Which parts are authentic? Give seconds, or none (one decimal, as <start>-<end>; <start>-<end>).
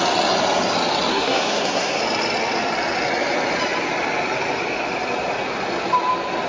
0.0-1.1; 2.0-6.5